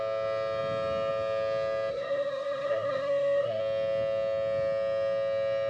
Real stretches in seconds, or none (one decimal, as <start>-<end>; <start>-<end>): 0.0-1.9; 3.6-5.7